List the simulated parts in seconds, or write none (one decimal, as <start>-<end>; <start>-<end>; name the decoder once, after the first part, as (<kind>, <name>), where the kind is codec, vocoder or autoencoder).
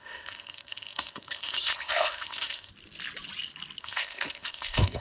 0.0-2.7 (codec, ZipCodec); 3.8-5.0